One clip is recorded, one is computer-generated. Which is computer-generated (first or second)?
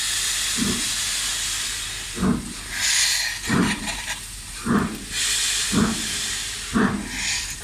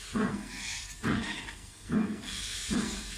second